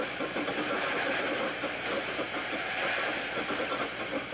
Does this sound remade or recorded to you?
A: recorded